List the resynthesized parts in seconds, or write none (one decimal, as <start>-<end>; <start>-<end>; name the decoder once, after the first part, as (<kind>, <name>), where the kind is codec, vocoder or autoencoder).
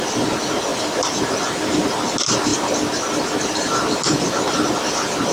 none